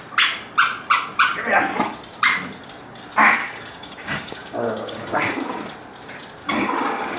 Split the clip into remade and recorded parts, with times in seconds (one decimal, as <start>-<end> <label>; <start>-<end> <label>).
0.0-3.4 recorded; 3.4-5.6 remade; 5.6-6.4 recorded; 6.4-7.2 remade